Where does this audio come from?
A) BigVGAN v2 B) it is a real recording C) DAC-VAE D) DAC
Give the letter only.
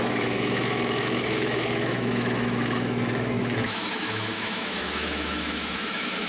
C